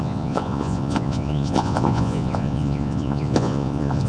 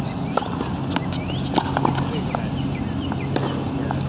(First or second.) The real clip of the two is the second